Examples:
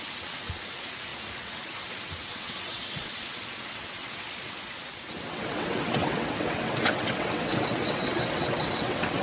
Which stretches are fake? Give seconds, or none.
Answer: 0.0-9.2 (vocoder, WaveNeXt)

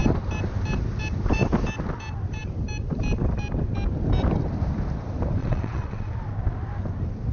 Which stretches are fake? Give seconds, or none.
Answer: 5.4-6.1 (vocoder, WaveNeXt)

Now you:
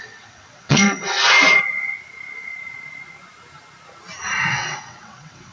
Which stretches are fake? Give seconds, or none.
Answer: 0.0-1.2 (vocoder, WaveNeXt); 4.5-5.5

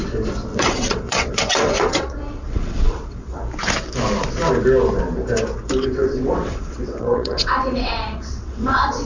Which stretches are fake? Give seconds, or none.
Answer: 0.5-3.4 (vocoder, WaveNeXt); 5.8-9.1